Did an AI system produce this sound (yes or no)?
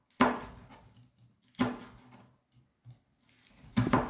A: no